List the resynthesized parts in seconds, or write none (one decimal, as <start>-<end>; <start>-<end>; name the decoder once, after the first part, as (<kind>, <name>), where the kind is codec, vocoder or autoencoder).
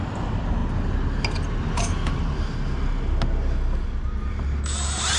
none